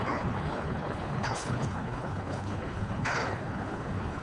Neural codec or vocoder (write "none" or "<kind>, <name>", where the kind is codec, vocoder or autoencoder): codec, HILCodec